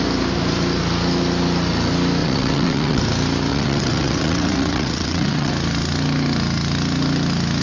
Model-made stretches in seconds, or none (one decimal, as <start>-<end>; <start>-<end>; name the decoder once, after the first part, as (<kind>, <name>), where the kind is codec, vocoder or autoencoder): 2.2-3.0 (vocoder, WaveNeXt); 3.5-5.5